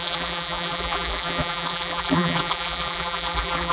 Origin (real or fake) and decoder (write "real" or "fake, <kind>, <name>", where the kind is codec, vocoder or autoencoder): fake, vocoder, BigVGAN v2